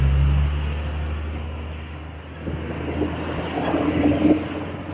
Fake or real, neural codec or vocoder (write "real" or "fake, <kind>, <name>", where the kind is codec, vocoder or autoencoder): real